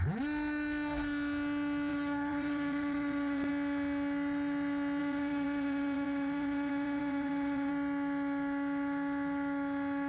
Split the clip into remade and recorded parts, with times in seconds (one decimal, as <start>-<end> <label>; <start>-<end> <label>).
0.0-1.9 recorded; 1.9-3.5 remade; 3.5-5.0 recorded; 5.0-7.7 remade; 7.7-10.1 recorded